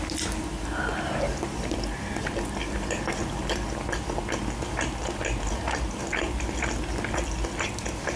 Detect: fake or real real